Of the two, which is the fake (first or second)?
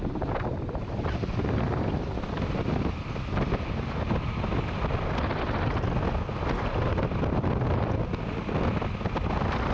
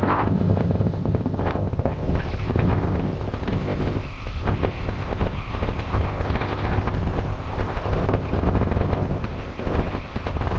second